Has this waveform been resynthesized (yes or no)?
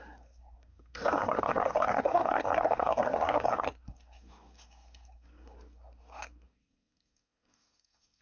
yes